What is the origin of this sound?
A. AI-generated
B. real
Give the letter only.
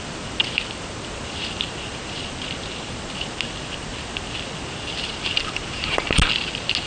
B